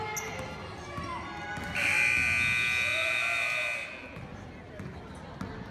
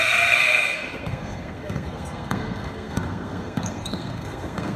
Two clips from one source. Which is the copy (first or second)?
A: second